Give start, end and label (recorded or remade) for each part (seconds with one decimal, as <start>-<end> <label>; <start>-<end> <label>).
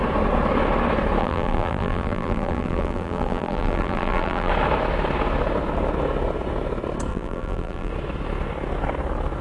0.0-1.2 recorded; 1.2-4.5 remade; 4.5-7.1 recorded; 7.1-7.9 remade; 7.9-9.4 recorded